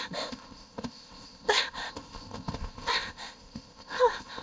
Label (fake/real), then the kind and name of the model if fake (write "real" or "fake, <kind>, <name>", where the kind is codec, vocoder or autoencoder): fake, codec, ZipCodec